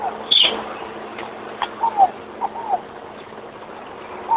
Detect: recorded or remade recorded